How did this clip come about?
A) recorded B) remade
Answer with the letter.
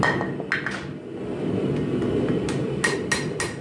A